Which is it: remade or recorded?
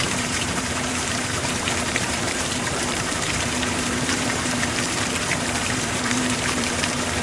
remade